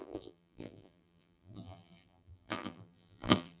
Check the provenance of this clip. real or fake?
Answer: fake